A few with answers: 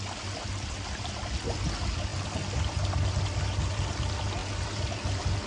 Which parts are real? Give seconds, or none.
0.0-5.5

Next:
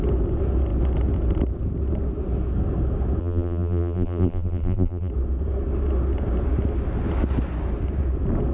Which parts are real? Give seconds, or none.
0.0-3.2; 5.1-8.5

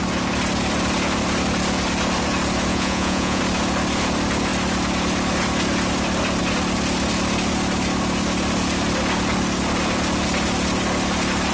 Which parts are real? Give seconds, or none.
0.0-2.7; 3.4-11.5

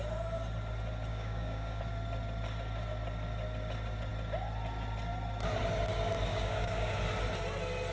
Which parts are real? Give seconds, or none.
0.0-1.1; 1.8-6.3; 7.0-7.9

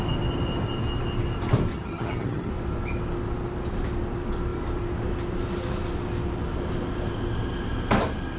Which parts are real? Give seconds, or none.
0.0-1.7; 2.5-8.4

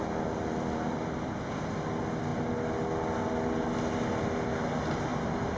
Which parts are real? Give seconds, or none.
0.0-5.6

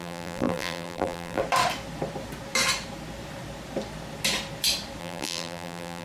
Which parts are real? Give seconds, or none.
1.4-5.0